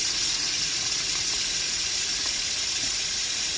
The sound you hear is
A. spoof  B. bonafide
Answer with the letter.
A